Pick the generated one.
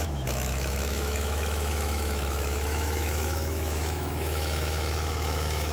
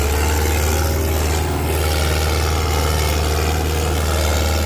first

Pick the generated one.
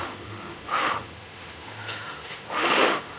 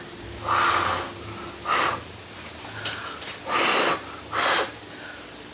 first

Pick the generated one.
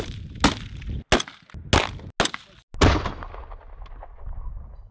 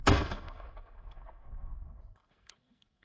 second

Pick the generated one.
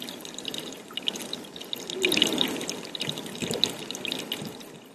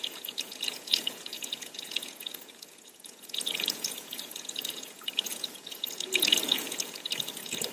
second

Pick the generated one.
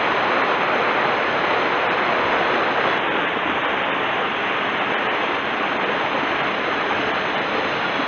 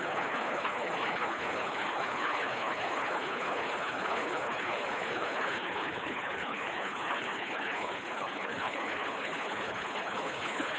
second